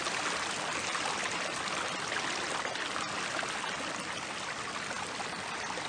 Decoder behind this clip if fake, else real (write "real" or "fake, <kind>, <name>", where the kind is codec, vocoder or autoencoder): real